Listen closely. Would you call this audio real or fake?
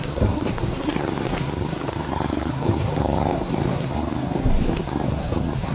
fake